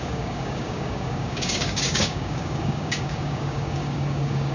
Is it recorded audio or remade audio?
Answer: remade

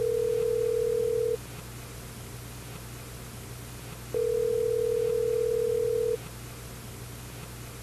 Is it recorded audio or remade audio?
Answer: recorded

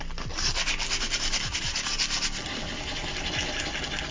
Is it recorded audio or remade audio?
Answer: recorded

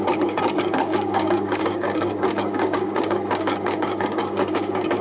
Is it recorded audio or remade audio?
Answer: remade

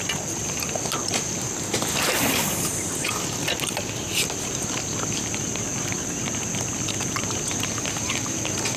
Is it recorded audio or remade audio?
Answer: recorded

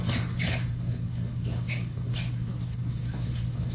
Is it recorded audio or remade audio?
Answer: remade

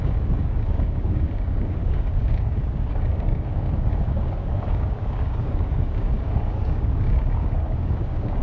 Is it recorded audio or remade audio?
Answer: remade